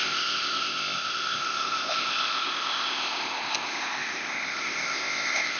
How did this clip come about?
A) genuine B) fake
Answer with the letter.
B